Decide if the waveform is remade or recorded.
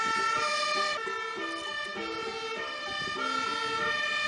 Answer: recorded